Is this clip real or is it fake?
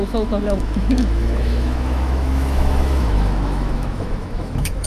fake